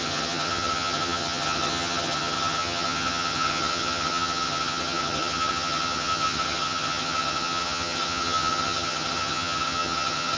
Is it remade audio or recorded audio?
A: remade